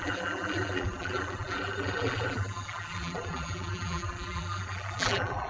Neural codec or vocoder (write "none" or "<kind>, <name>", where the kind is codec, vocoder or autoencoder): vocoder, BigVGAN v2